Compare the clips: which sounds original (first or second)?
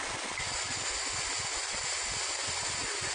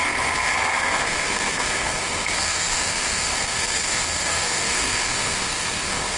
first